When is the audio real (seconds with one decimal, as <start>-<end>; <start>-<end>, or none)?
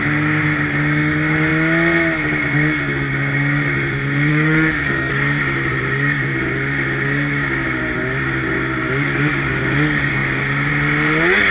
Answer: 0.0-4.3; 5.1-11.5